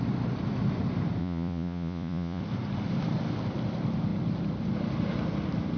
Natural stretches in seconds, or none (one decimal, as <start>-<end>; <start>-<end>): 0.0-1.2; 2.4-5.8